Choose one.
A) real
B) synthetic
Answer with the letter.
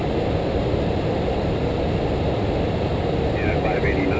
A